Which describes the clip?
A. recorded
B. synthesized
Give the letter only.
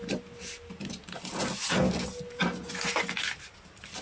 A